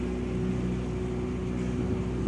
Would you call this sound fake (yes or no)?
no